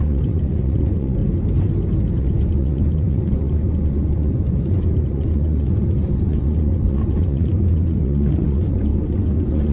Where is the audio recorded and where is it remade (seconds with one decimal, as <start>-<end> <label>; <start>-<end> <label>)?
0.0-1.2 remade; 1.2-2.2 recorded; 2.2-9.7 remade